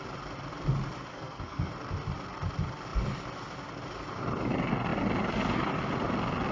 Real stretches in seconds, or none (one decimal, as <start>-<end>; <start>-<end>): 0.0-1.1; 1.7-6.5

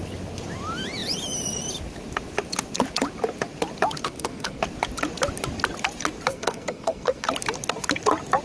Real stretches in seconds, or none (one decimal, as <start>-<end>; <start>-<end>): 0.0-4.0; 4.6-6.3; 7.3-8.4